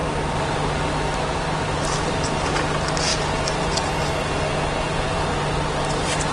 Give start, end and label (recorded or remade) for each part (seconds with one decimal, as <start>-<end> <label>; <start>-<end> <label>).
0.0-6.3 recorded